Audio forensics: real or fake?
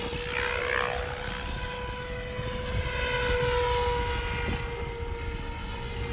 real